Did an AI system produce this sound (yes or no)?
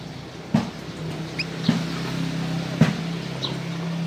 no